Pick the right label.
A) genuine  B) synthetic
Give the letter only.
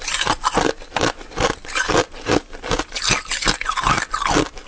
A